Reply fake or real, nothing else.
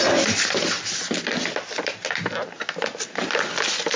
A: real